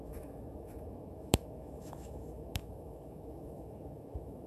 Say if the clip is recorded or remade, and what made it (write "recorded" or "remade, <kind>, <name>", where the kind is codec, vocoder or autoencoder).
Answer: remade, autoencoder, DAC-VAE